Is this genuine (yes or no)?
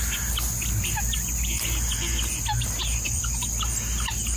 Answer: yes